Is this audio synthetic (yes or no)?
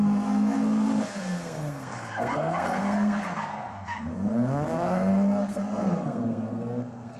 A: yes